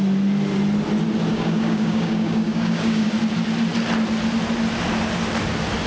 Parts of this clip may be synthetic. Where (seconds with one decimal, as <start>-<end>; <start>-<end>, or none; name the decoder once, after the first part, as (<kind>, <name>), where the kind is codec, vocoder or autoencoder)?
1.3-3.1 (codec, DAC)